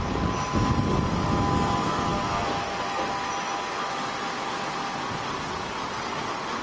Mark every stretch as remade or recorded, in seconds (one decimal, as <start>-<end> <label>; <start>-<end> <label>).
0.0-6.6 recorded